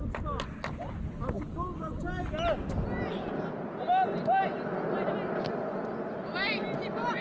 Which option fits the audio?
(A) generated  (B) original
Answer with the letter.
B